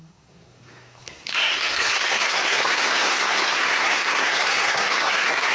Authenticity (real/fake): fake